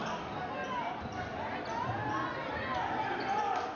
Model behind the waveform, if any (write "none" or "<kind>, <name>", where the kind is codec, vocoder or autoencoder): none